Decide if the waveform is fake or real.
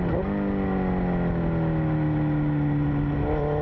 real